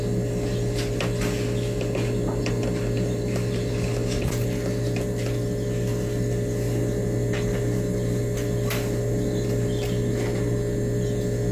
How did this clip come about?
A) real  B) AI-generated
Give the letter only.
A